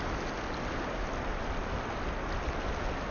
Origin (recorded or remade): recorded